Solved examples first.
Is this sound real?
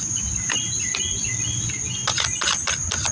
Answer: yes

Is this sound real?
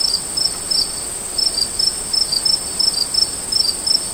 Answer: yes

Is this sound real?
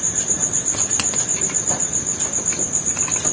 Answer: yes